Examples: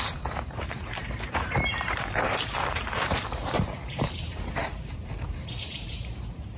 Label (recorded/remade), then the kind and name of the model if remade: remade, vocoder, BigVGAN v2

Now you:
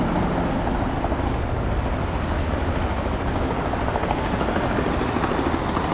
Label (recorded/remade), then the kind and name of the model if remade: recorded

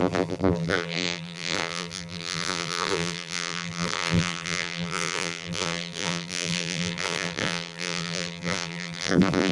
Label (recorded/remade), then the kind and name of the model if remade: remade, vocoder, BigVGAN v2